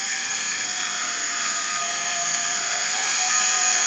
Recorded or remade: remade